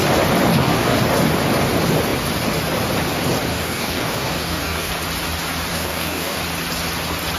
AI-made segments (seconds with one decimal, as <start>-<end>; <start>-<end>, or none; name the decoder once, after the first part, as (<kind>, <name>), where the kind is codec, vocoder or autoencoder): 0.5-1.0 (codec, DAC); 3.5-4.9; 5.7-6.4